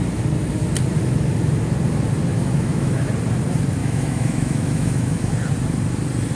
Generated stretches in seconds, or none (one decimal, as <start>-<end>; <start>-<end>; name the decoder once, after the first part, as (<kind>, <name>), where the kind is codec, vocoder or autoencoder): 2.3-3.1 (autoencoder, DAC-VAE); 3.8-5.3